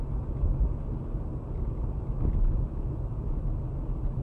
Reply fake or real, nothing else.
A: real